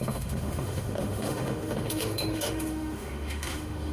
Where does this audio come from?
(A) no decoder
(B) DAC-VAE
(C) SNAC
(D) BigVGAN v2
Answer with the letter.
B